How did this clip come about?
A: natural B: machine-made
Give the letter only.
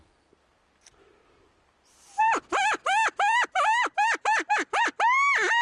B